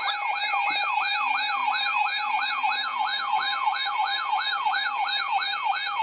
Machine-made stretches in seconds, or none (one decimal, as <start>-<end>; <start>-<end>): 0.0-6.0